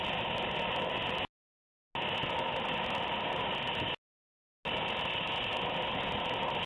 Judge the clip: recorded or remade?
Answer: recorded